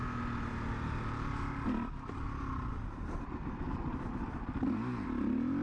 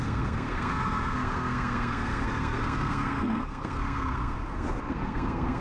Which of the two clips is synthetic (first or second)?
second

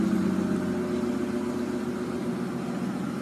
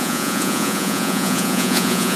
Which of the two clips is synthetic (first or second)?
second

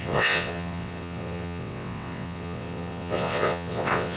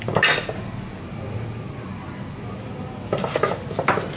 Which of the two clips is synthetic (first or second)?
first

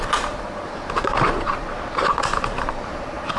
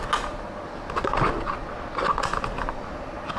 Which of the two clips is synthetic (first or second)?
first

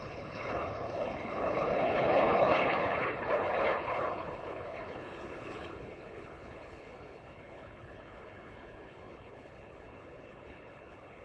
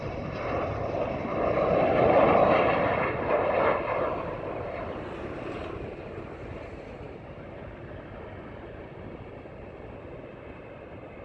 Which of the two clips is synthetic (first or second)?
first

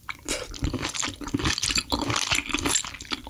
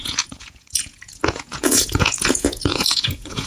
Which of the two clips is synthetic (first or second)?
second